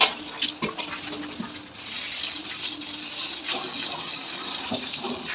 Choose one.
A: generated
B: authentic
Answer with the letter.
B